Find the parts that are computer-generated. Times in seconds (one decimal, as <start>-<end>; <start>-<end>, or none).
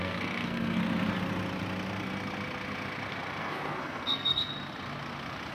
0.0-0.8; 3.4-4.5